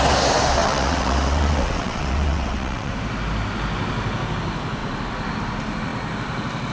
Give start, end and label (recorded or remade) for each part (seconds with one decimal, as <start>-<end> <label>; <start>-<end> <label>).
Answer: 0.0-0.6 recorded; 0.6-2.9 remade; 2.9-6.7 recorded